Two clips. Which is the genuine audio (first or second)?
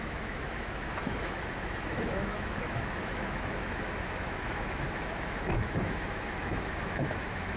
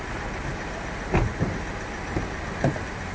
second